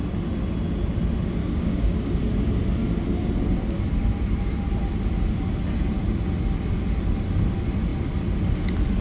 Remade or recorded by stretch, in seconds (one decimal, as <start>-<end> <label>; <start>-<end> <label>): 0.0-1.4 recorded; 1.4-2.2 remade; 2.2-9.0 recorded